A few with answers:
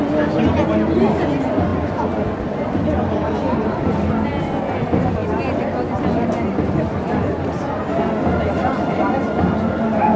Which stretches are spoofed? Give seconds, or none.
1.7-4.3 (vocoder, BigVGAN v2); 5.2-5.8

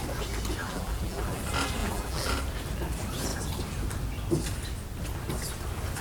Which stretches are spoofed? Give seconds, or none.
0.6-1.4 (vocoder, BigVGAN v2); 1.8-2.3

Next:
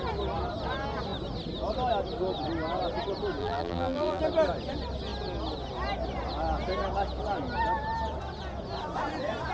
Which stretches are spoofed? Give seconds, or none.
3.4-4.2 (vocoder, BigVGAN v2)

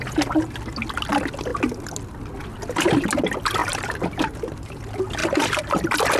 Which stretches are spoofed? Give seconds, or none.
3.6-4.8 (vocoder, BigVGAN v2)